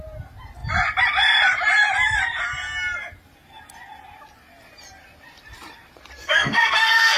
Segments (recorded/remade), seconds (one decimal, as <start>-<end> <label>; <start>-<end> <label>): 0.0-6.2 recorded; 6.2-7.2 remade